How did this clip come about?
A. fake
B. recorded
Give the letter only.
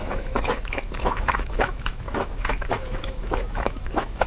A